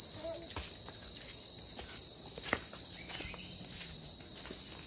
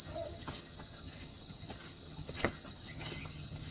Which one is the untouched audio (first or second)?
first